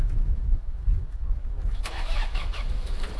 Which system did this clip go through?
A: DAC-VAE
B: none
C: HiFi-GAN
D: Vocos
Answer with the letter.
A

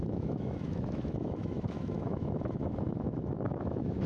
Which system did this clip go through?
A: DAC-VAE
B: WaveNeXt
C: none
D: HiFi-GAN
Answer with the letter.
A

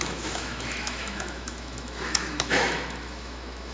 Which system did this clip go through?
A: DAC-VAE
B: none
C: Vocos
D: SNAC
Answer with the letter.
A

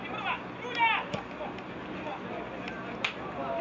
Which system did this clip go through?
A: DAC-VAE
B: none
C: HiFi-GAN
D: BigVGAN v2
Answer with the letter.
B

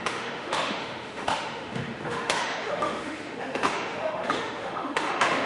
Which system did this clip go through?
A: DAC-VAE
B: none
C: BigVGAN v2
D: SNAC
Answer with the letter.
A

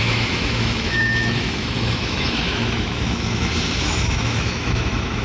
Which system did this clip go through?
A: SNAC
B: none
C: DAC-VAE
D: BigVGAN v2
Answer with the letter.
C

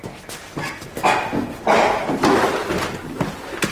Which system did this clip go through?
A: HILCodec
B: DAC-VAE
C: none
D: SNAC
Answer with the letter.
C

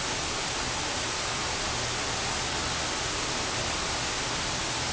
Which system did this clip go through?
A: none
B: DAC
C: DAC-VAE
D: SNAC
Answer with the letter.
A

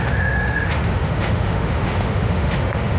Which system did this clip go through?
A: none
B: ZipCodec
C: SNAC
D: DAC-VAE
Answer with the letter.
D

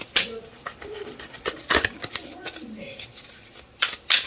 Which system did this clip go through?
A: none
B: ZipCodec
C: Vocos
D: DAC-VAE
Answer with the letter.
A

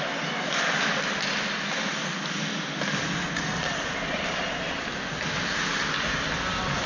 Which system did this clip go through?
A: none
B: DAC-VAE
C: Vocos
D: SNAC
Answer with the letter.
A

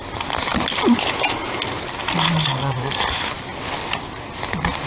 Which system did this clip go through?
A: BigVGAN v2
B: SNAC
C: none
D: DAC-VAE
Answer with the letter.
C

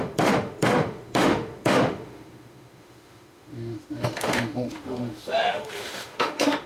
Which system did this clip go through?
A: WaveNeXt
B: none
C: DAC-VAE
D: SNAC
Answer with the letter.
C